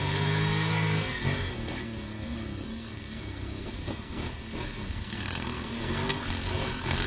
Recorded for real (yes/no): no